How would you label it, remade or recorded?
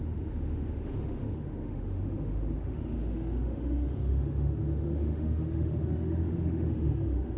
remade